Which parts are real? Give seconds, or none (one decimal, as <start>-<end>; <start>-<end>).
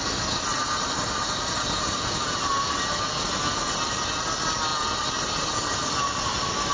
0.0-0.5; 2.5-6.7